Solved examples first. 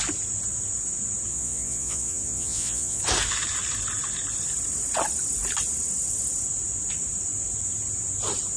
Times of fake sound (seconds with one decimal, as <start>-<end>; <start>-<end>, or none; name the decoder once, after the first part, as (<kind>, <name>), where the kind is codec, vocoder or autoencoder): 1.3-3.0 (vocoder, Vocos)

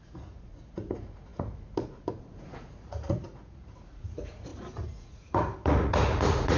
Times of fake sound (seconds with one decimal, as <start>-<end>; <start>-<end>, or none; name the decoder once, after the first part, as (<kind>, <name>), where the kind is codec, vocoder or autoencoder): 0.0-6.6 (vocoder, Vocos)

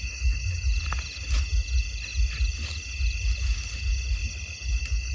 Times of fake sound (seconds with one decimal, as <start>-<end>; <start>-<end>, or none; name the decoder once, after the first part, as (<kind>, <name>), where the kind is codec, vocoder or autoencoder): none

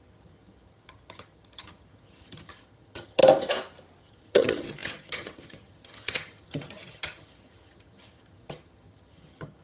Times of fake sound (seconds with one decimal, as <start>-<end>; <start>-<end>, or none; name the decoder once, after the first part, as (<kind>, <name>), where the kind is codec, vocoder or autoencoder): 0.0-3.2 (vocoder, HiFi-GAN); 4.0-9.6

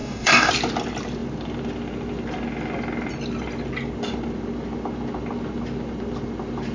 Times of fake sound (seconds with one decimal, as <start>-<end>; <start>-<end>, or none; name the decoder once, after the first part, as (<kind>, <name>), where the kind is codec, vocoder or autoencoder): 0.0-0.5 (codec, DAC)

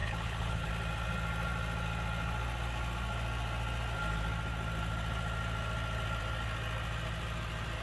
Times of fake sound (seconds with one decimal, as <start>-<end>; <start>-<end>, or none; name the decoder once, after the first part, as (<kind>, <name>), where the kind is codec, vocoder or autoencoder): 0.0-0.7 (codec, HILCodec)

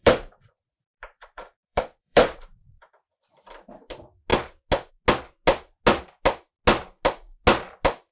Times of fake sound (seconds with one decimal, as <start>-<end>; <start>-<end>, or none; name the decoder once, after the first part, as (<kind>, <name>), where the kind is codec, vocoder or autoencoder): 0.0-3.2 (vocoder, BigVGAN v2)

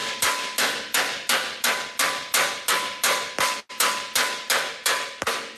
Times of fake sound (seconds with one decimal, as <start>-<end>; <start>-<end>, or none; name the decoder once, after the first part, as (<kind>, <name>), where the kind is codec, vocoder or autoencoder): none